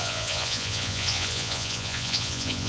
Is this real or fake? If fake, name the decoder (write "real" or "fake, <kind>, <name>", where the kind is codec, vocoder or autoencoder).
fake, vocoder, Vocos